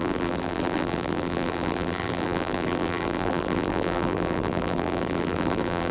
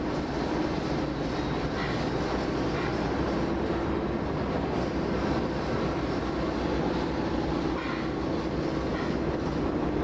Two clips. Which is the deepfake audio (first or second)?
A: first